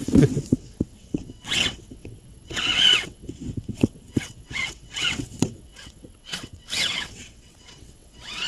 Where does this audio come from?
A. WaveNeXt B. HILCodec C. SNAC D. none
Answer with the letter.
A